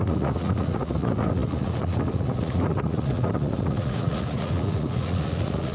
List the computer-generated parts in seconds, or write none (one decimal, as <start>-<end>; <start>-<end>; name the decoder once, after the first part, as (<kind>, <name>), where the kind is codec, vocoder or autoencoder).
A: 0.0-5.7 (vocoder, Vocos)